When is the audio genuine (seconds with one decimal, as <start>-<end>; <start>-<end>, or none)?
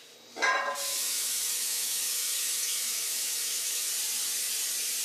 0.0-0.9; 3.9-5.0